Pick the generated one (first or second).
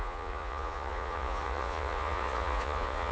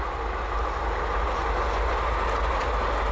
first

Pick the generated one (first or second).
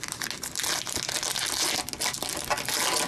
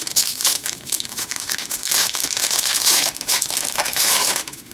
second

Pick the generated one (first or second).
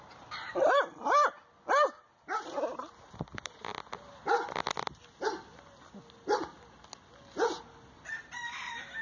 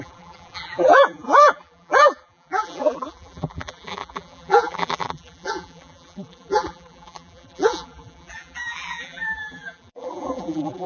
second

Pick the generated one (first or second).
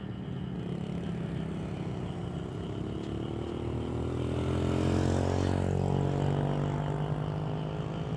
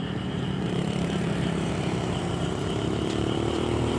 second